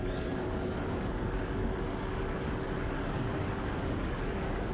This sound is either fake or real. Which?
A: fake